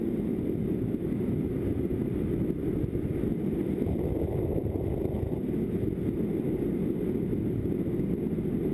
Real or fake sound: real